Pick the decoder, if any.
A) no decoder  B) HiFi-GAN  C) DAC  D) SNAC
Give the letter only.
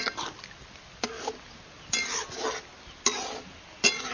A